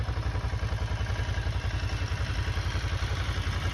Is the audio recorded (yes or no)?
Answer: yes